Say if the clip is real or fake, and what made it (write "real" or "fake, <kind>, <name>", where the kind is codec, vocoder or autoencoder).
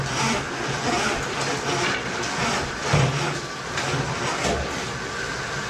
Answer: real